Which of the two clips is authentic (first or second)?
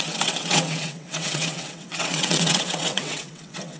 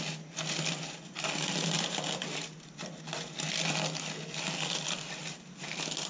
second